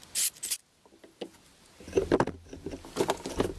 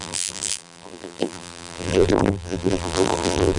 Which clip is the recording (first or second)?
first